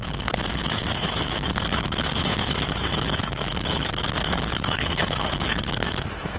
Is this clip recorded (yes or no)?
no